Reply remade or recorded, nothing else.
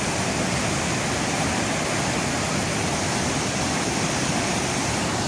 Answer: recorded